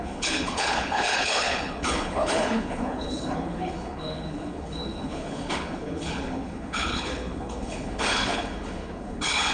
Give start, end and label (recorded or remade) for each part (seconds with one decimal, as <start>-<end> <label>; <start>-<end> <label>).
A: 0.0-9.5 remade